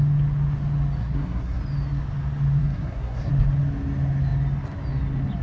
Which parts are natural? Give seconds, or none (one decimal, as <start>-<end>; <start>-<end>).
0.0-1.0; 1.6-2.6; 3.3-5.4